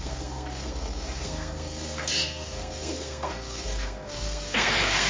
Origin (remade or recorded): remade